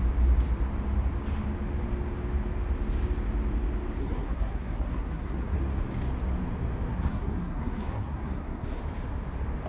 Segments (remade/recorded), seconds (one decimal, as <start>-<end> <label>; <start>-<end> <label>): 0.0-4.0 recorded; 4.0-5.6 remade; 5.6-6.9 recorded; 6.9-8.8 remade; 8.8-9.7 recorded